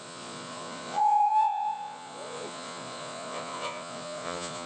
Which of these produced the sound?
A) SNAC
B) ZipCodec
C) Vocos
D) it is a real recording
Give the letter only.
C